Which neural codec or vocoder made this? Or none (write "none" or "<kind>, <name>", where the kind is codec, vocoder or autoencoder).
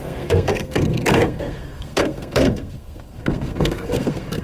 codec, SNAC